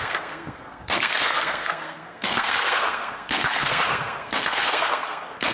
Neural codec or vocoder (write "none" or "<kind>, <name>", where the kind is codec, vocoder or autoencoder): codec, SNAC